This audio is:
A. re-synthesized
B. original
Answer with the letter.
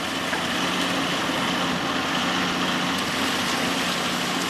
B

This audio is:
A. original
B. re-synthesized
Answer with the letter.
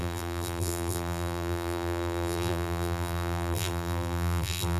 B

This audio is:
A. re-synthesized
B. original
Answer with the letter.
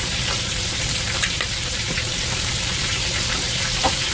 A